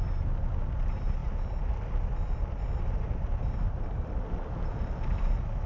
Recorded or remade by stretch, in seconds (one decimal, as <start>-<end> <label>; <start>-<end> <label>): 0.0-5.7 recorded